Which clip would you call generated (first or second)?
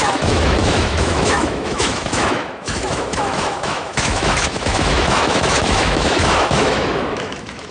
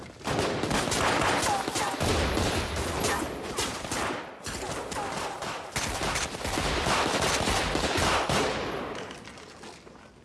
first